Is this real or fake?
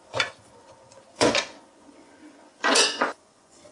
fake